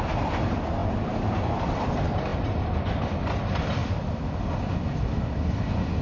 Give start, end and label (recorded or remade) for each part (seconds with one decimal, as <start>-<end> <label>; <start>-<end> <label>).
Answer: 0.0-0.8 recorded; 0.8-1.9 remade; 1.9-2.3 recorded; 2.3-3.0 remade; 3.0-3.8 recorded; 3.8-4.3 remade; 4.3-6.0 recorded